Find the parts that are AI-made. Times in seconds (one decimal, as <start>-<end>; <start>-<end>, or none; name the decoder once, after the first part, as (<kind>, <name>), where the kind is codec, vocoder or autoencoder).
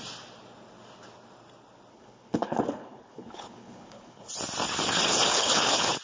1.9-4.3 (codec, HILCodec); 5.3-6.0